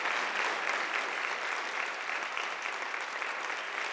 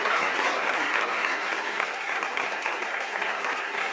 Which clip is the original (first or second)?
first